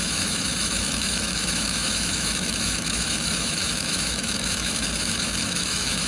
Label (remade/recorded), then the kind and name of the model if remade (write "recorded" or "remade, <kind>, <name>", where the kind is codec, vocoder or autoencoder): remade, autoencoder, DAC-VAE